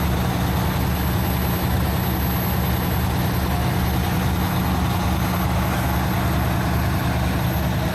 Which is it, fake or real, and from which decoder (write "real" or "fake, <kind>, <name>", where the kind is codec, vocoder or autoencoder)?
real